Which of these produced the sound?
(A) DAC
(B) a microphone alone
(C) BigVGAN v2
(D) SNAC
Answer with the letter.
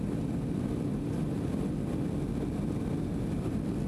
B